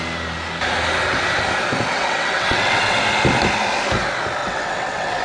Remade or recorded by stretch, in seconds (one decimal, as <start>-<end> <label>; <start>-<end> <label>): 0.0-1.9 recorded; 1.9-3.0 remade; 3.0-4.4 recorded; 4.4-5.2 remade